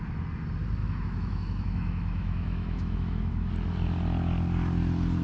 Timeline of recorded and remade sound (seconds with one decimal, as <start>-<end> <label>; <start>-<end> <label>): 0.0-0.8 recorded; 0.8-3.5 remade; 3.5-5.2 recorded